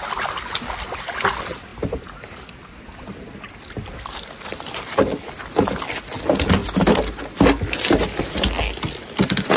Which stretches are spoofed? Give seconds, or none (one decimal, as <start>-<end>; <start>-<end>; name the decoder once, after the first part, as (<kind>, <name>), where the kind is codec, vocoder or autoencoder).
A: none